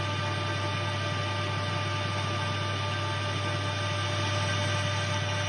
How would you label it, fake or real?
real